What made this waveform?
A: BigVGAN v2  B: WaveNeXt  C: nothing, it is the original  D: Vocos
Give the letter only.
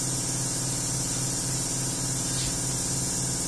C